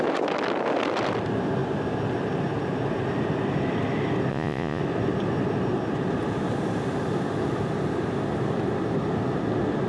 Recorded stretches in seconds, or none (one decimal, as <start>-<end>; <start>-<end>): 0.0-4.3; 4.8-9.9